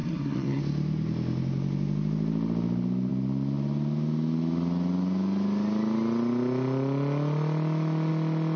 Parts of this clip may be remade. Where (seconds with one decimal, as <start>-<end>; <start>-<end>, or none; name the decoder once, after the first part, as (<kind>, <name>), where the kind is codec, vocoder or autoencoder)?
0.0-0.6 (codec, SNAC)